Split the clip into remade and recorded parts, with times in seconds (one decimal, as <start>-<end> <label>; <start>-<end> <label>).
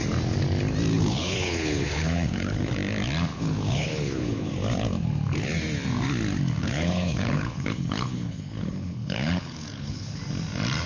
0.0-0.9 recorded; 0.9-2.7 remade; 2.7-3.3 recorded; 3.3-4.5 remade; 4.5-6.6 recorded; 6.6-10.2 remade; 10.2-10.9 recorded